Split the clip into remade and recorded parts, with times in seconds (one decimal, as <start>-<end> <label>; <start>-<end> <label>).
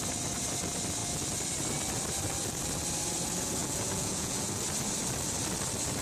0.0-3.6 recorded; 3.6-4.5 remade; 4.5-6.0 recorded